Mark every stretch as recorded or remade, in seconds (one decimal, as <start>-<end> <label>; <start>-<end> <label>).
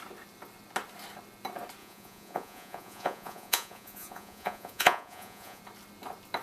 0.0-1.8 recorded; 1.8-5.6 remade; 5.6-6.4 recorded